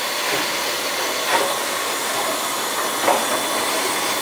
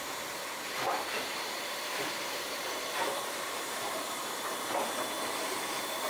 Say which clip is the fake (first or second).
second